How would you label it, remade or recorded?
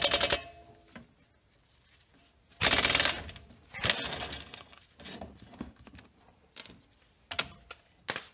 recorded